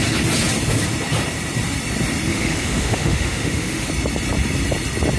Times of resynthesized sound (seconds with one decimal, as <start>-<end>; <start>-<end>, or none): 2.3-3.9